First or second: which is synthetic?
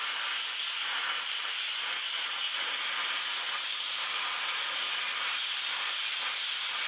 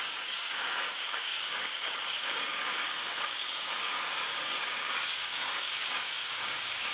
second